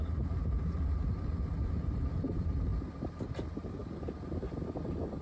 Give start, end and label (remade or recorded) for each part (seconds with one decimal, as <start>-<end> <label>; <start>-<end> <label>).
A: 0.0-3.8 remade; 3.8-5.2 recorded